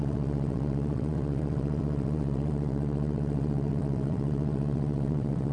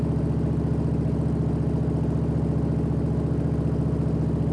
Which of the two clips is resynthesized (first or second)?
first